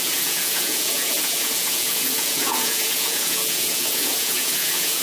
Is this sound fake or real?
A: fake